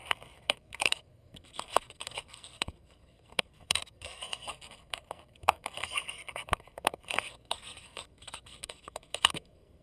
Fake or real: fake